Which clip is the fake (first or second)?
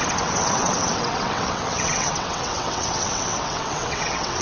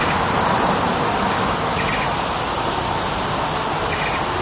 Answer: first